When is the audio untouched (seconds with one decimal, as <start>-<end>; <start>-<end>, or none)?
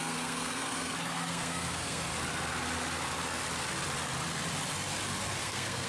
2.1-5.4